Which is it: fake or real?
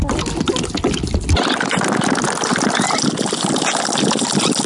real